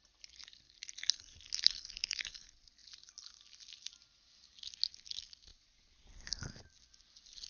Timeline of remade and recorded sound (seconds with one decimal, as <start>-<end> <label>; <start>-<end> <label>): 0.0-7.5 recorded